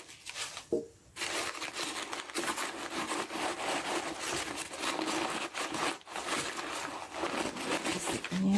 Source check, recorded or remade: recorded